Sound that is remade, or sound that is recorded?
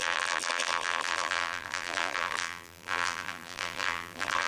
remade